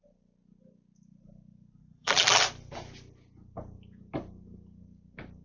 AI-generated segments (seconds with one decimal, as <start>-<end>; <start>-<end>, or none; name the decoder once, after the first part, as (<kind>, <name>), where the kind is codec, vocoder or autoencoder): 1.8-2.4 (vocoder, BigVGAN v2)